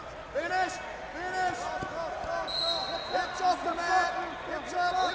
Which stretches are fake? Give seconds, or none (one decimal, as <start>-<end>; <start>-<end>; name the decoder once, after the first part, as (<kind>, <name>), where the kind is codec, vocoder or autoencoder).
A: none